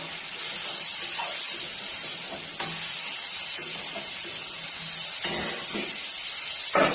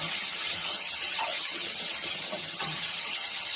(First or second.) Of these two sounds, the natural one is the first